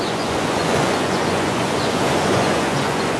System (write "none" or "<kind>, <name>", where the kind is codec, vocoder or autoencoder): vocoder, Vocos